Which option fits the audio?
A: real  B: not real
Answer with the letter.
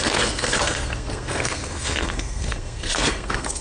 B